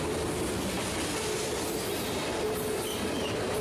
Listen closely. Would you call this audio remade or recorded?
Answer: recorded